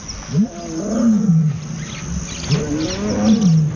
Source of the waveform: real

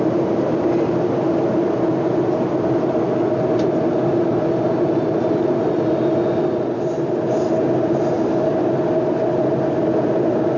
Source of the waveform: real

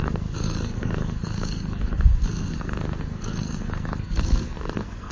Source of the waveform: fake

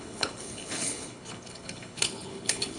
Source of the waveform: fake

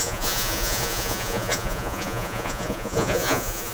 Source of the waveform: fake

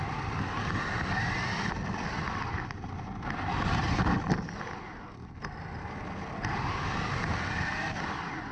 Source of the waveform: real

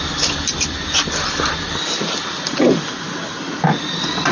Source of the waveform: real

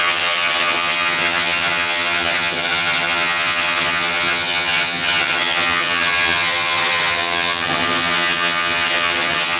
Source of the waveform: fake